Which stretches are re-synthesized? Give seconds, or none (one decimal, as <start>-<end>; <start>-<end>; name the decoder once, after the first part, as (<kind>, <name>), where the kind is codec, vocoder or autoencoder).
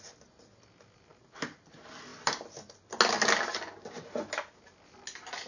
none